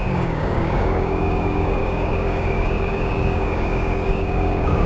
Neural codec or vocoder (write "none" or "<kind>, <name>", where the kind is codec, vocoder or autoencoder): codec, DAC